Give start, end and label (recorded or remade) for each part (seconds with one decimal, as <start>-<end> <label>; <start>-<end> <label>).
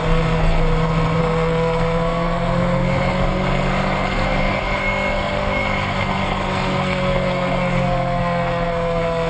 0.0-0.6 remade; 0.6-1.2 recorded; 1.2-9.3 remade